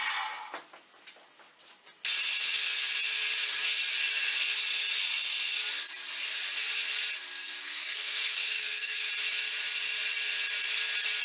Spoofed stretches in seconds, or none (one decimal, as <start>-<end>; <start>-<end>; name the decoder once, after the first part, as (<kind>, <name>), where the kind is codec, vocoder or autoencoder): 7.3-9.1 (codec, SNAC)